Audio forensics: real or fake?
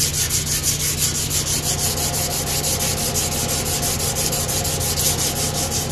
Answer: real